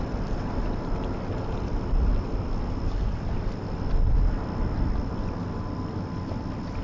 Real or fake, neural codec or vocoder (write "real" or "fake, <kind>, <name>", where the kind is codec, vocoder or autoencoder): real